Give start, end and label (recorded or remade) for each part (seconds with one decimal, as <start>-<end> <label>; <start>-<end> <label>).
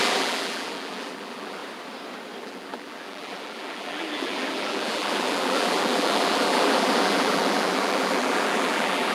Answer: 0.0-1.6 remade; 1.6-2.4 recorded; 2.4-9.1 remade